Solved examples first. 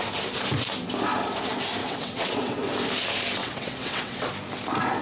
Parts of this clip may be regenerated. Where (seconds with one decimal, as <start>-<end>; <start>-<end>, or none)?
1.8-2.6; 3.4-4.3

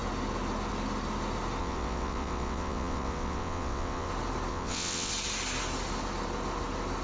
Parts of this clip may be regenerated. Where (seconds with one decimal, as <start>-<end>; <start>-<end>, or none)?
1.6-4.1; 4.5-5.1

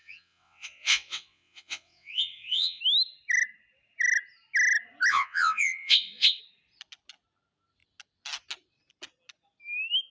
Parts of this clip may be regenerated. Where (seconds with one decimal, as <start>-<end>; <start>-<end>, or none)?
0.0-2.8; 5.1-6.4